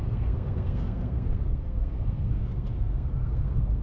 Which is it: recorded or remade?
remade